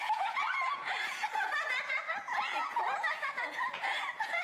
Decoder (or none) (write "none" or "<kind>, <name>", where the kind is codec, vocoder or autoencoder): vocoder, Vocos